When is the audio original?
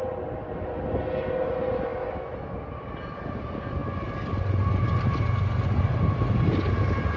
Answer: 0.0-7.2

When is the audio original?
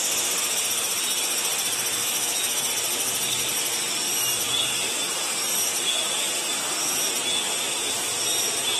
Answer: 0.0-2.0; 2.7-8.8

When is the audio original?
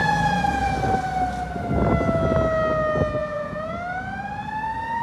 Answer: 0.7-3.2; 3.7-5.0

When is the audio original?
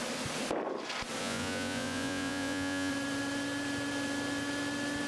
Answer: 0.0-1.2; 2.9-5.1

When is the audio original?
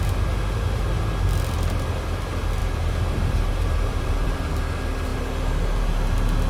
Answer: 0.0-2.6; 4.5-6.5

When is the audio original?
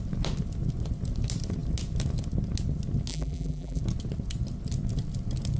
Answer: 0.0-3.1; 3.8-5.6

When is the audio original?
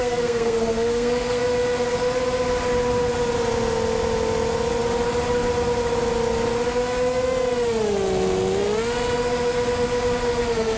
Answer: 1.4-10.8